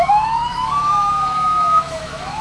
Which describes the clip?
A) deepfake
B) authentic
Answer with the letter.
A